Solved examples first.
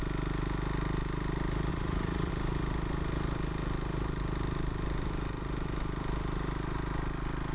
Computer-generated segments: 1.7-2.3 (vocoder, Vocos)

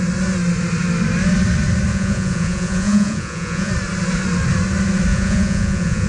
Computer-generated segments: 1.9-3.7 (vocoder, Vocos); 5.1-6.1

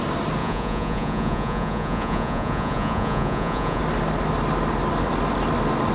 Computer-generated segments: 0.4-3.8 (vocoder, Vocos)

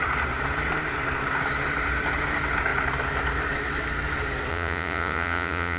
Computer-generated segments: 4.5-5.8 (vocoder, Vocos)

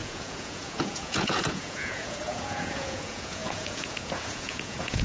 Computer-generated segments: 0.0-5.0 (vocoder, Vocos)

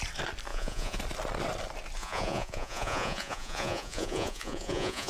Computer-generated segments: 0.5-1.0 (vocoder, Vocos); 2.0-5.1